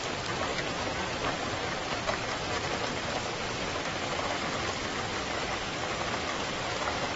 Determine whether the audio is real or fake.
fake